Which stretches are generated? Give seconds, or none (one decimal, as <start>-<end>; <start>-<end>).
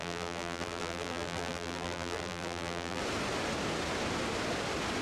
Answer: 0.0-3.0